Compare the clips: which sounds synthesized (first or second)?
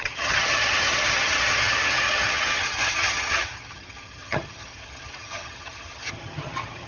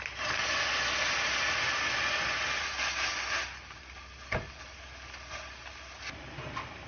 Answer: first